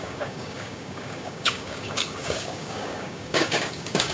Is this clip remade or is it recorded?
remade